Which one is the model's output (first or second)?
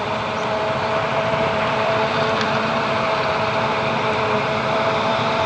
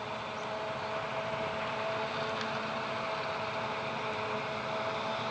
first